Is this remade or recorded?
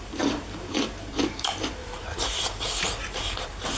remade